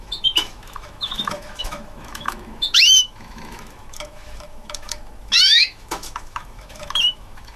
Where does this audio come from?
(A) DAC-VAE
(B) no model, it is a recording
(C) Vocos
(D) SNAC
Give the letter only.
A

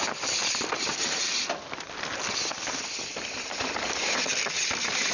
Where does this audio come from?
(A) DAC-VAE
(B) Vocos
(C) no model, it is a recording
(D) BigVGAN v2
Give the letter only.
D